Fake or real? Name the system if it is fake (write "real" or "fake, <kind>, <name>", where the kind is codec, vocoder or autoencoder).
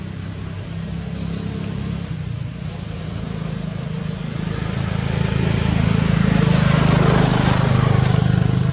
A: real